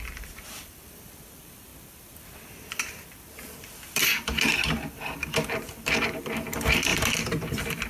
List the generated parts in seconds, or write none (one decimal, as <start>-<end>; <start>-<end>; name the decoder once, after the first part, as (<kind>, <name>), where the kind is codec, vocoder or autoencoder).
0.0-1.7 (vocoder, BigVGAN v2); 3.6-7.9